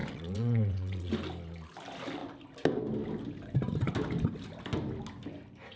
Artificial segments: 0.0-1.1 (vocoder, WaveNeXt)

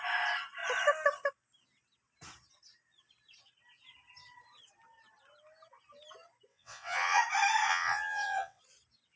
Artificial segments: 6.5-7.2 (vocoder, WaveNeXt); 7.7-8.6

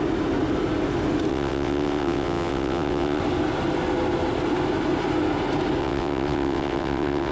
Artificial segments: 1.3-3.2 (vocoder, WaveNeXt); 5.8-7.3

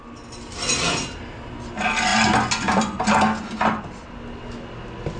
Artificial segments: none

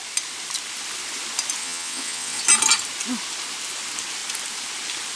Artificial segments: 1.6-2.4 (vocoder, WaveNeXt)

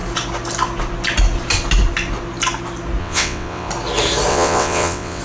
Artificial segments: 3.0-3.7 (vocoder, WaveNeXt); 4.3-5.2

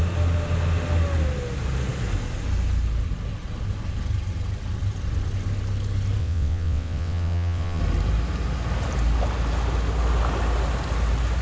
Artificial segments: 6.2-7.8 (vocoder, WaveNeXt)